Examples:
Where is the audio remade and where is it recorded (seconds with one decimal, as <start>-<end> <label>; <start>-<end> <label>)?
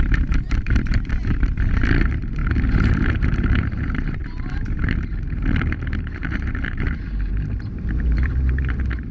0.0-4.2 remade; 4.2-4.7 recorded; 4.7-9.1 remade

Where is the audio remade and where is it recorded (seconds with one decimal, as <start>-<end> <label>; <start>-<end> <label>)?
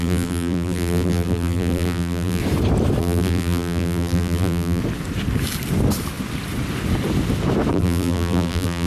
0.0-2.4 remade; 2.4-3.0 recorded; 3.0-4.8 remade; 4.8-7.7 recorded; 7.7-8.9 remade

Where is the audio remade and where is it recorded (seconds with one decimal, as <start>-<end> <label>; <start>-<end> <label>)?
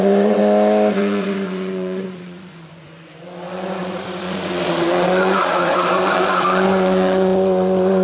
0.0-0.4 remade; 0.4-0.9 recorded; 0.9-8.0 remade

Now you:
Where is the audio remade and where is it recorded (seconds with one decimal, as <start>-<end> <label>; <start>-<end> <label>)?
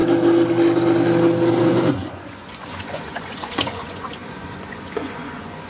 0.0-1.6 recorded; 1.6-5.7 remade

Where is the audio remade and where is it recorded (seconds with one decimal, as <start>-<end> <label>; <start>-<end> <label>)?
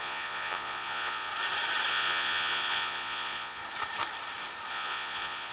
0.0-1.3 remade; 1.3-1.9 recorded; 1.9-3.6 remade; 3.6-4.7 recorded; 4.7-5.5 remade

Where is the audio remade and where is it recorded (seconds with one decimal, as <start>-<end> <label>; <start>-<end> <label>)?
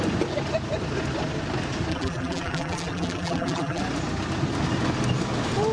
0.0-1.9 recorded; 1.9-3.8 remade; 3.8-5.7 recorded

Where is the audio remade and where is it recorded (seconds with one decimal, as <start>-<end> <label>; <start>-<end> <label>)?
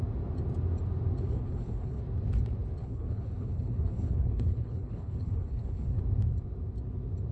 0.0-1.2 recorded; 1.2-2.0 remade; 2.0-2.8 recorded; 2.8-6.0 remade; 6.0-7.3 recorded